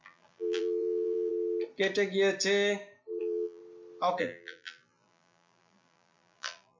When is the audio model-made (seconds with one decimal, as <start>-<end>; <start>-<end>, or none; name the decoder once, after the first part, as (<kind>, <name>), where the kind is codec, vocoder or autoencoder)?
0.0-1.3 (vocoder, BigVGAN v2); 3.2-3.6; 4.2-6.8